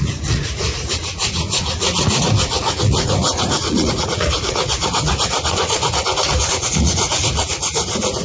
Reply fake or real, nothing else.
fake